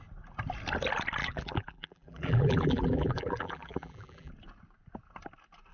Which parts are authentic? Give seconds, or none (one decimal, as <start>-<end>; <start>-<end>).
0.0-1.2; 4.3-5.7